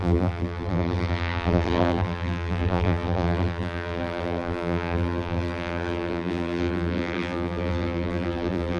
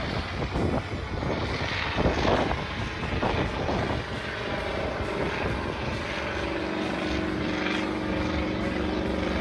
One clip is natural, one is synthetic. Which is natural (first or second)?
second